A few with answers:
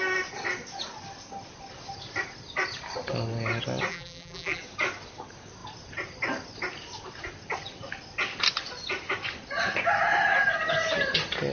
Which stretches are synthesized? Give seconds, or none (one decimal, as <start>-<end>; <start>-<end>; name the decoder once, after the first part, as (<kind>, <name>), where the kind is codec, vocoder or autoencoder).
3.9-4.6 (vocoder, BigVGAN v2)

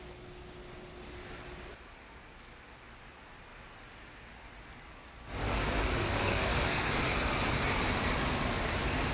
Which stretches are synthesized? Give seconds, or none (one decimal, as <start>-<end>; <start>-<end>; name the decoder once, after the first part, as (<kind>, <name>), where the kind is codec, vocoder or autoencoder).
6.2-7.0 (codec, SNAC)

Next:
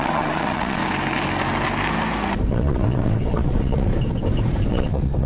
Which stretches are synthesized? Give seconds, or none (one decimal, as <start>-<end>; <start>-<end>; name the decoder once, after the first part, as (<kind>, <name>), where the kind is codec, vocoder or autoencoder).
0.0-0.8 (vocoder, WaveNeXt); 2.5-3.9; 4.7-5.3

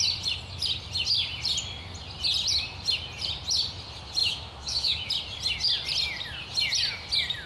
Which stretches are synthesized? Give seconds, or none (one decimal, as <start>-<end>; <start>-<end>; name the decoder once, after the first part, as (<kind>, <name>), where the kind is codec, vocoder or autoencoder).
4.2-5.1 (autoencoder, DAC-VAE)

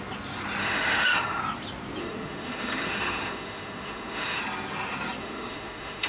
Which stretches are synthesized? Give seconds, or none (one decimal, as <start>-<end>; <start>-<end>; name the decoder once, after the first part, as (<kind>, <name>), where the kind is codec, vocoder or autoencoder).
0.6-1.4 (autoencoder, DAC-VAE); 2.0-4.4; 5.2-6.1

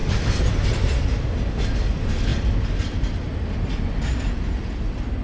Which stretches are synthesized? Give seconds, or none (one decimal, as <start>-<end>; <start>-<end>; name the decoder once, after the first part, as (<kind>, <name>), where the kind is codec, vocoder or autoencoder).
none

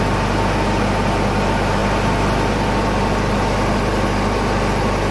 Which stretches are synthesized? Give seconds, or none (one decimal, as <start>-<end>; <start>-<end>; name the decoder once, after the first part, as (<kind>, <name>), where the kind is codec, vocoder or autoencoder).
1.8-5.1 (vocoder, BigVGAN v2)

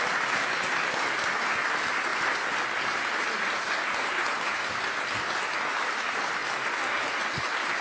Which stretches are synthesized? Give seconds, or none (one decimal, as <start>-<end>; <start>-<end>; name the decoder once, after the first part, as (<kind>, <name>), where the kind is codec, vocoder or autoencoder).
none